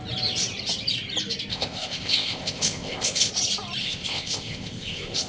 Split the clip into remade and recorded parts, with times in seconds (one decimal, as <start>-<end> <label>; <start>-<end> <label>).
0.0-1.5 recorded; 1.5-3.3 remade; 3.3-3.8 recorded; 3.8-5.3 remade